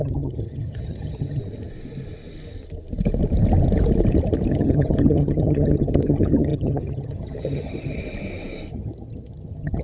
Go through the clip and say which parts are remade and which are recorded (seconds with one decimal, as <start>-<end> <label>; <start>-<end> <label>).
0.0-1.4 remade; 1.4-4.5 recorded; 4.5-8.0 remade; 8.0-8.7 recorded; 8.7-9.8 remade